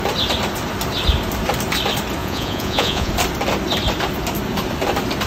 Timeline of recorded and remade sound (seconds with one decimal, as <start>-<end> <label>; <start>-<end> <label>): 0.0-2.2 recorded; 2.2-3.1 remade; 3.1-5.3 recorded